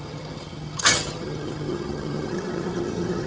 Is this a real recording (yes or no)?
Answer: no